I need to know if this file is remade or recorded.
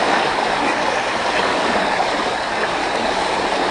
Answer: remade